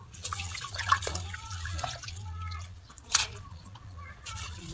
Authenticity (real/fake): fake